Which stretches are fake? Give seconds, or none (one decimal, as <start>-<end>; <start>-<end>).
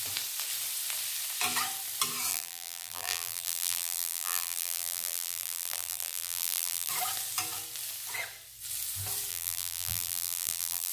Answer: 2.3-6.9; 9.3-10.9